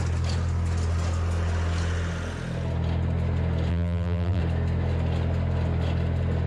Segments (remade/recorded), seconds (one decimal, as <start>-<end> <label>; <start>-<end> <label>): 0.0-3.7 recorded; 3.7-4.4 remade; 4.4-6.5 recorded